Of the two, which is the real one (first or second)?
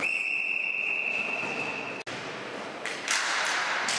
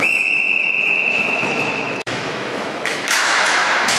first